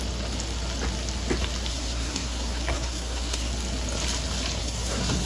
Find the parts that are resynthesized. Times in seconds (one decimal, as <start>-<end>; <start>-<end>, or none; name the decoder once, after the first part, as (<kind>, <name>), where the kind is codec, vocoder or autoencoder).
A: 1.7-3.5 (codec, SNAC); 4.6-5.3